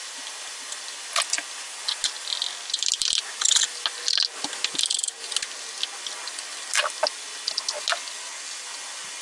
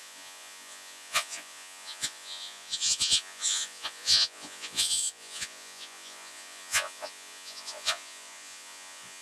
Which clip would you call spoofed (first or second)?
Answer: second